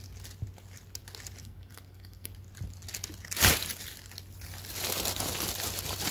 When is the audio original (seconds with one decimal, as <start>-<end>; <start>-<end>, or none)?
0.0-1.4; 2.3-6.1